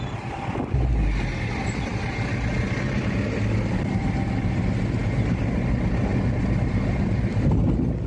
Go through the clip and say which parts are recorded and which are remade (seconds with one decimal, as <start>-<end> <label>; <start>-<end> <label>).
0.0-8.1 recorded